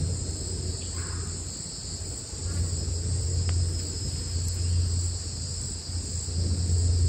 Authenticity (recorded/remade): recorded